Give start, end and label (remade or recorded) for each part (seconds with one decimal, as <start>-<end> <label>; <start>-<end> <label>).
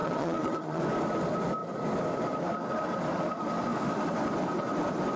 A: 0.0-0.8 remade; 0.8-5.2 recorded